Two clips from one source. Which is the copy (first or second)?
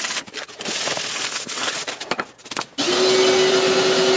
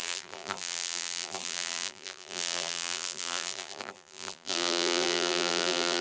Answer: second